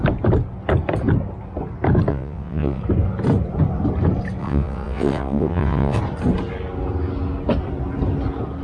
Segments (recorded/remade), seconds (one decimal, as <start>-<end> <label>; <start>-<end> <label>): 0.0-2.1 recorded; 2.1-2.8 remade; 2.8-4.4 recorded; 4.4-6.0 remade; 6.0-8.6 recorded

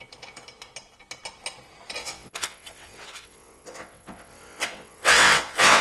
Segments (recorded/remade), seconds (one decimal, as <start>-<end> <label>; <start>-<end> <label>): 0.0-2.0 recorded; 2.0-5.8 remade

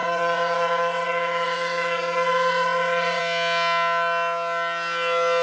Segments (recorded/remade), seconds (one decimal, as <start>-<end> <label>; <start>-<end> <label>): 0.0-3.2 remade; 3.2-5.4 recorded

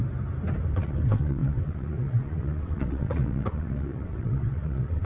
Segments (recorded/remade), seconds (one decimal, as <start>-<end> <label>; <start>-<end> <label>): 0.0-0.7 recorded; 0.7-5.1 remade

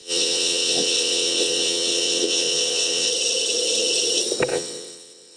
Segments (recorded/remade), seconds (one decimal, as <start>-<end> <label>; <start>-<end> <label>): 0.0-3.1 remade; 3.1-4.5 recorded; 4.5-5.4 remade